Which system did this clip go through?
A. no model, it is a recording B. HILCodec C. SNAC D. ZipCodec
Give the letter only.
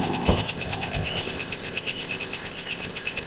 D